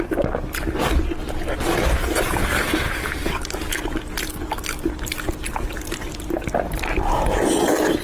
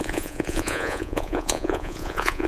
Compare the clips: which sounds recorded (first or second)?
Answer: first